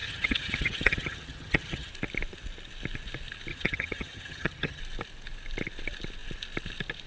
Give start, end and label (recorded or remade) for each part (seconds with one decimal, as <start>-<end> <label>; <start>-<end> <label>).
0.0-1.9 remade; 1.9-3.5 recorded; 3.5-4.8 remade; 4.8-7.1 recorded